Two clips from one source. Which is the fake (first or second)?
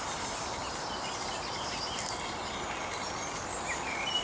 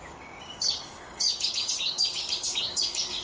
second